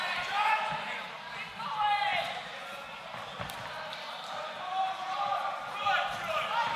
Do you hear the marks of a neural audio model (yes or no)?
yes